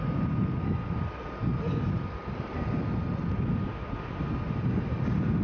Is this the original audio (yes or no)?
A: yes